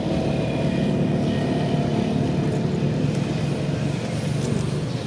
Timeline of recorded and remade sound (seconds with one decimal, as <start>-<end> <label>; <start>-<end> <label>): 0.0-5.1 recorded